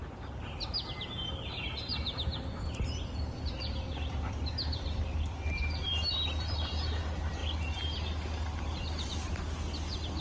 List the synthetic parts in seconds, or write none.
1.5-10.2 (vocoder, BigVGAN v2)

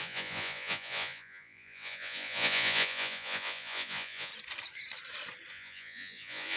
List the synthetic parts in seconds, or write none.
0.0-4.3 (vocoder, Vocos); 5.5-6.6

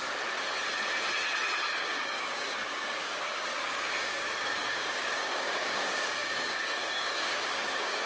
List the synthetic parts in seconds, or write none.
1.8-8.1 (codec, DAC)